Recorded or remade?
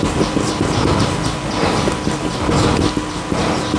recorded